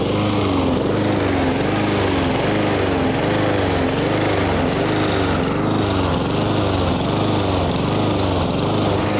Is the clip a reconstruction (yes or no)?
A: no